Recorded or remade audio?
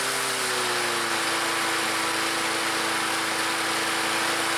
recorded